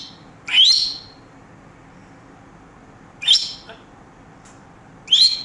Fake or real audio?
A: real